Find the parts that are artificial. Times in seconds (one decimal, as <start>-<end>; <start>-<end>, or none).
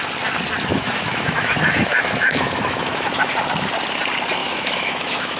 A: 0.7-3.3; 4.4-5.4